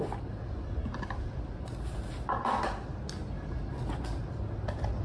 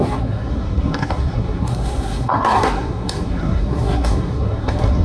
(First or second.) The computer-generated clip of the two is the second